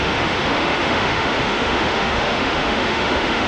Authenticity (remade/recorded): remade